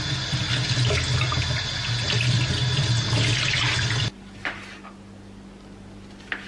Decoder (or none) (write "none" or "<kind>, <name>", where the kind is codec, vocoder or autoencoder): none